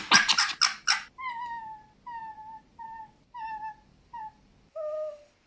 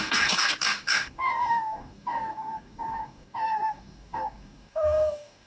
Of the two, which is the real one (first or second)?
first